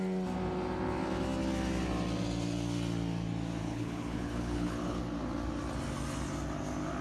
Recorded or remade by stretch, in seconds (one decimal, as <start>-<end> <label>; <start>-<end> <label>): 0.0-3.6 recorded; 3.6-5.0 remade; 5.0-7.0 recorded